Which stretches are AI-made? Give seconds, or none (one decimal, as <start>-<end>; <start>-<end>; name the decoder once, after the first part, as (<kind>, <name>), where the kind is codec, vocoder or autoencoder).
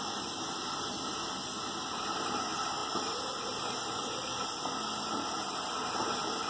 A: none